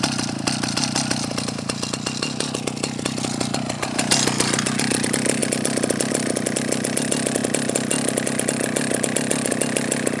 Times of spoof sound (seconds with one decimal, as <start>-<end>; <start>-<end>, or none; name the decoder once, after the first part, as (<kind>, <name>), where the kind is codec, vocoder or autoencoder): none